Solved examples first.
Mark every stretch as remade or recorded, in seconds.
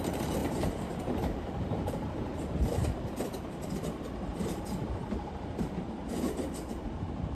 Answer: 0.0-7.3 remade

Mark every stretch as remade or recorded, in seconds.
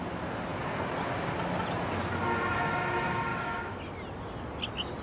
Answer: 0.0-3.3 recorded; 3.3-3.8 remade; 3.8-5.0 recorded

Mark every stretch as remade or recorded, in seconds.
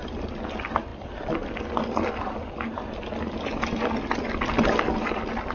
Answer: 0.0-5.5 recorded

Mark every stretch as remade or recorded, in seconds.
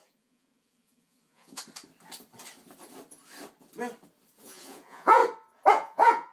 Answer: 0.0-1.6 remade; 1.6-4.4 recorded; 4.4-5.2 remade; 5.2-5.7 recorded; 5.7-6.3 remade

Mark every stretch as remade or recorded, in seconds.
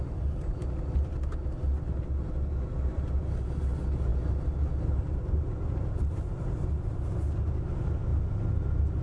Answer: 0.0-9.0 recorded